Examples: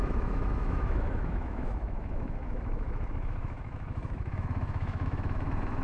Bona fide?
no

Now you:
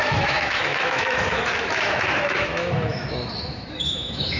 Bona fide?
no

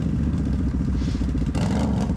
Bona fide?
yes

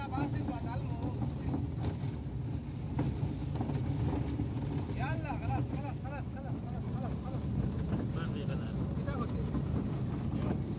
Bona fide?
yes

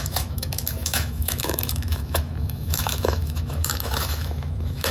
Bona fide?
no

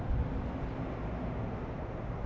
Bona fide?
yes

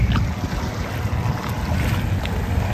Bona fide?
yes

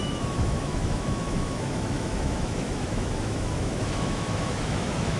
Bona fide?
no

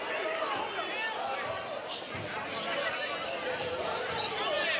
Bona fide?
yes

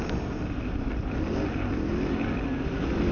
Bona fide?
yes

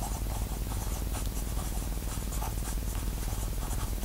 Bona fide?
yes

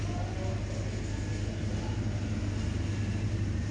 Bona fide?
yes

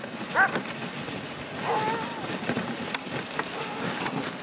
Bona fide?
yes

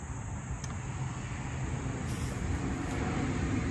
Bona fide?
yes